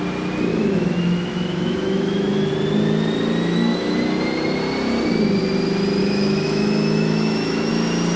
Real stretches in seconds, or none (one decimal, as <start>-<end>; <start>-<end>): 0.0-0.5; 2.5-6.0; 7.7-8.2